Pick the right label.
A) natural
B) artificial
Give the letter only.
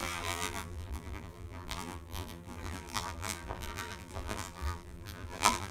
B